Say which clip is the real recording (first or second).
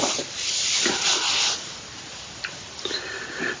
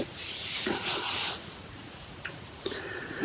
first